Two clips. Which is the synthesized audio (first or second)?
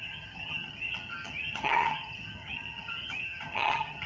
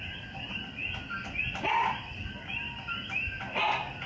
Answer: first